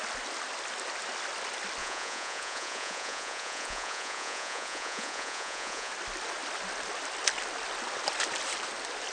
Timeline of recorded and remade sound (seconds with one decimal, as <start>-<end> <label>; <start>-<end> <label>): 0.0-1.8 recorded; 1.8-5.9 remade; 5.9-9.1 recorded